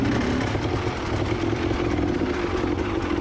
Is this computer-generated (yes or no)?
no